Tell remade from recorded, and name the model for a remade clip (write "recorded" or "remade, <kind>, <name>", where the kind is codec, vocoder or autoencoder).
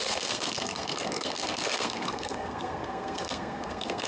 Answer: remade, codec, SNAC